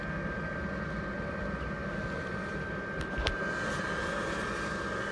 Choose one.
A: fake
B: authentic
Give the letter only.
B